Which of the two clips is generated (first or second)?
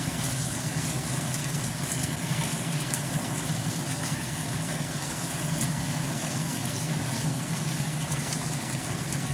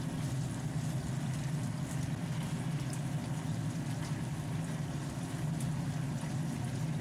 first